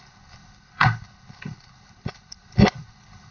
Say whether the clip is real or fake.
fake